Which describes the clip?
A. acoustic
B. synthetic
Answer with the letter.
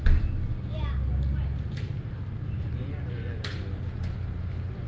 A